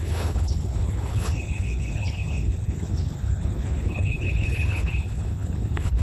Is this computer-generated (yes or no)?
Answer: yes